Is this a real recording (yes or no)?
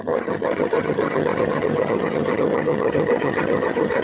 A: no